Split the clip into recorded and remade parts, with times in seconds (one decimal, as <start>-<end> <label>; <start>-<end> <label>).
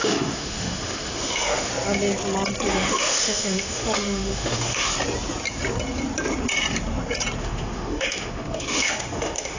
0.0-1.7 remade; 1.7-2.7 recorded; 2.7-4.9 remade; 4.9-7.4 recorded; 7.4-9.6 remade